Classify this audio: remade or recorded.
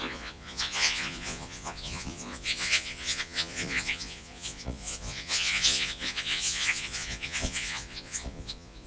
remade